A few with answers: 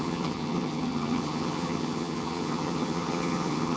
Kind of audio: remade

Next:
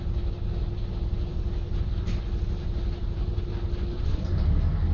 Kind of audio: recorded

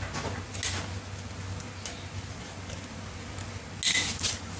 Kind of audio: recorded